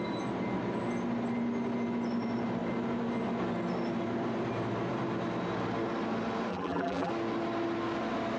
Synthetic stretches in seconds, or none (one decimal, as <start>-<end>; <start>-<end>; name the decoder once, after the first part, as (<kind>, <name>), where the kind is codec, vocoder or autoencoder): 6.5-7.1 (vocoder, BigVGAN v2)